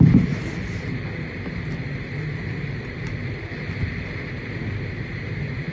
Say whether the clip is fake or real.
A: fake